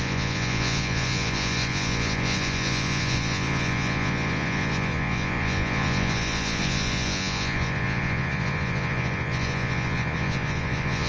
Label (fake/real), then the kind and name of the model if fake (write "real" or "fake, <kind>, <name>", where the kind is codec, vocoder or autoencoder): fake, vocoder, Vocos